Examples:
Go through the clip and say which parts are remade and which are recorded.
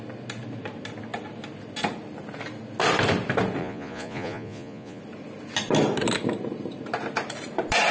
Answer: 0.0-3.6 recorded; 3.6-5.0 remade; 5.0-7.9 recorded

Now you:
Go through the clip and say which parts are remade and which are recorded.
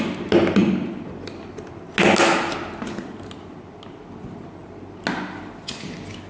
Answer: 0.0-6.3 recorded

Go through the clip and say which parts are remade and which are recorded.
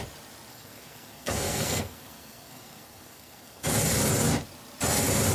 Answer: 0.0-0.5 recorded; 0.5-3.7 remade; 3.7-5.3 recorded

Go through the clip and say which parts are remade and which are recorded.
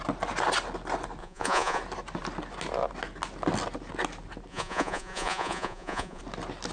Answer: 0.0-1.2 recorded; 1.2-1.8 remade; 1.8-4.5 recorded; 4.5-6.2 remade; 6.2-6.7 recorded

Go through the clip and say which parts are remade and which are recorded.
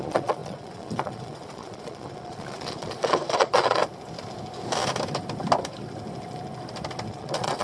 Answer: 0.0-3.8 remade; 3.8-7.1 recorded; 7.1-7.6 remade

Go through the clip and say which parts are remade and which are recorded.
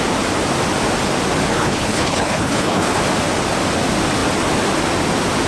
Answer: 0.0-1.5 recorded; 1.5-3.0 remade; 3.0-5.5 recorded